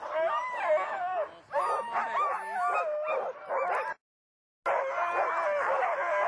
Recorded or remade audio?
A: recorded